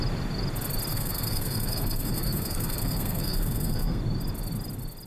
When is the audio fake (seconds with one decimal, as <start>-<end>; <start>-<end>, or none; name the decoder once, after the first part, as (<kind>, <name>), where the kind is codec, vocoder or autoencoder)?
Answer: 0.9-4.0 (codec, SNAC)